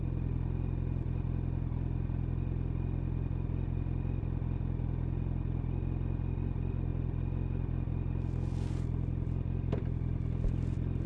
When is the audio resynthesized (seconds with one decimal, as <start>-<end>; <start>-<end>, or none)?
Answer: none